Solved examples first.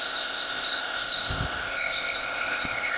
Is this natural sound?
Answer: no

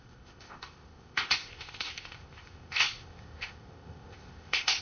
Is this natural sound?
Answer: no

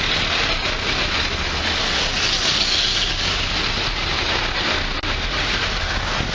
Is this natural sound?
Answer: yes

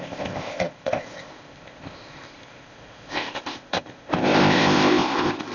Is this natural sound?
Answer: no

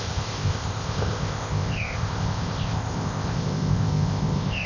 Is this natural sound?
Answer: no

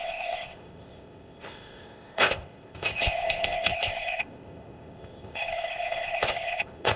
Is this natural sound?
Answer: no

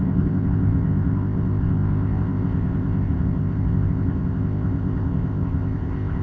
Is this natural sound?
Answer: no